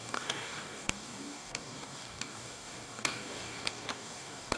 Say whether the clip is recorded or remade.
remade